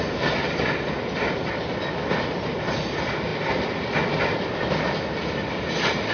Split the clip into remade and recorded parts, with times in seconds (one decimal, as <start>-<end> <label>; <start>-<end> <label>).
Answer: 0.0-6.1 recorded

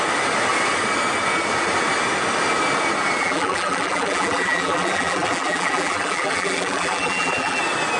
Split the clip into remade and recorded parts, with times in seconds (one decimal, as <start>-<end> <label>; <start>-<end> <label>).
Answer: 0.0-3.2 recorded; 3.2-7.6 remade; 7.6-8.0 recorded

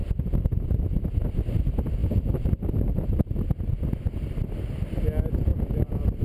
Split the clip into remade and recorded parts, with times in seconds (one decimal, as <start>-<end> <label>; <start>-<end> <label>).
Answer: 0.0-5.5 recorded; 5.5-6.2 remade

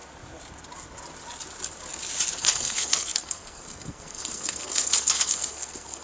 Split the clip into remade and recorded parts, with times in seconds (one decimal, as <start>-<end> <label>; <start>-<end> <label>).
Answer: 0.0-2.4 recorded; 2.4-6.0 remade

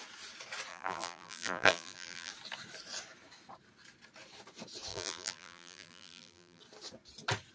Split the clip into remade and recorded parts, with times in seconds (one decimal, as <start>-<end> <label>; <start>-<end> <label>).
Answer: 0.0-0.7 recorded; 0.7-2.3 remade; 2.3-4.9 recorded; 4.9-6.6 remade; 6.6-7.5 recorded

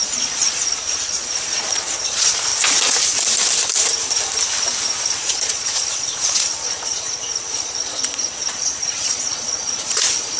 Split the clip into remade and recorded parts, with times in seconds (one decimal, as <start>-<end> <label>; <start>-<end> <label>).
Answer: 0.0-2.5 remade; 2.5-5.0 recorded; 5.0-10.4 remade